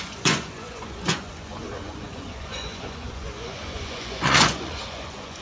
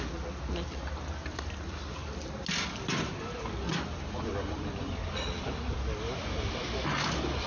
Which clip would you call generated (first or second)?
first